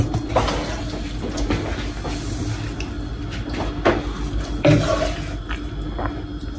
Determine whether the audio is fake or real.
real